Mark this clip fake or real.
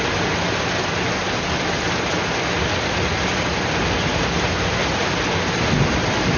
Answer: real